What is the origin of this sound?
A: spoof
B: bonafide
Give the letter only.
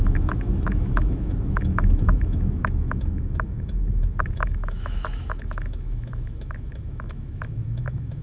A